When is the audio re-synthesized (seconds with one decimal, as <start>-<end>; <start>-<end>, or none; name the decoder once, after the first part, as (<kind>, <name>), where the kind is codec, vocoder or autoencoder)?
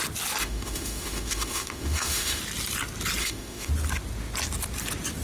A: 0.4-2.4 (autoencoder, DAC-VAE); 3.2-3.7